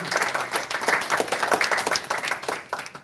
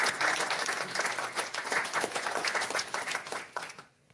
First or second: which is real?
first